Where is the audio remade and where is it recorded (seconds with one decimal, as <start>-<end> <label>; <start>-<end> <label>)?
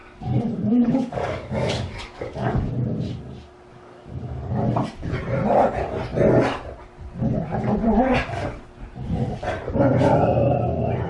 0.0-2.7 remade; 2.7-3.7 recorded; 3.7-4.5 remade; 4.5-11.1 recorded